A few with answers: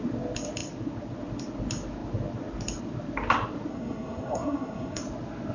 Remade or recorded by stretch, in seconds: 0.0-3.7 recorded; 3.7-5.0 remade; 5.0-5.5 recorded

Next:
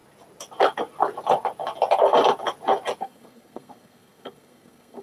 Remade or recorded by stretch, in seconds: 0.0-3.0 recorded; 3.0-5.0 remade

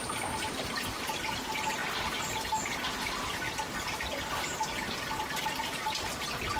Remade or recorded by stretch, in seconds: 0.0-6.6 recorded